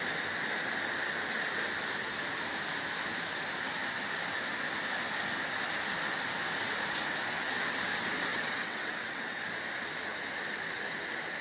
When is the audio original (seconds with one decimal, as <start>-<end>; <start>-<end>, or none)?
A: 0.0-8.3; 9.4-11.4

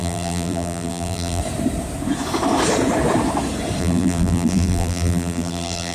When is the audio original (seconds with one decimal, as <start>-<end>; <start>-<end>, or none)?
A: 1.4-3.8

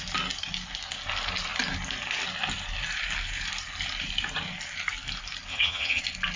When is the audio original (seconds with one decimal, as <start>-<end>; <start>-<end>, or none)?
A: 0.0-5.5; 6.0-6.4

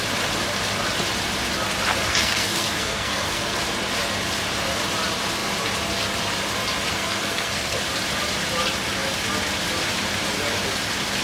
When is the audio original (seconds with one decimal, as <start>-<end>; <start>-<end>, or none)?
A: 0.0-2.1; 3.6-6.9; 7.8-11.2

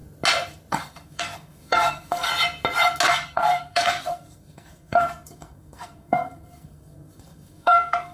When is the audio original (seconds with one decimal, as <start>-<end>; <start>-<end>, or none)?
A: 0.0-0.7; 2.3-3.1

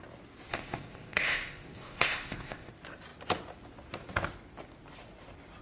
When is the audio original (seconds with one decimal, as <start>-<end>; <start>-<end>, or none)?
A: 0.0-0.5; 2.7-5.6

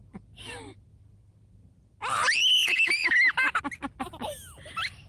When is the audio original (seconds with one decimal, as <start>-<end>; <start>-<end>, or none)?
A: 0.0-5.1

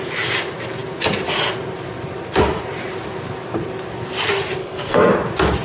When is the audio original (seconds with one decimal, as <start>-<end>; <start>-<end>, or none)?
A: 0.0-4.6; 5.1-5.6